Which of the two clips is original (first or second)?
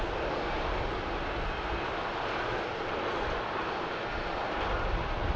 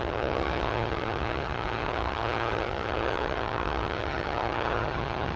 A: first